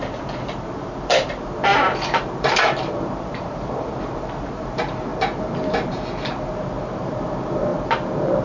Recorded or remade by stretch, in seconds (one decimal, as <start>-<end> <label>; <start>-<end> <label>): 0.0-8.4 remade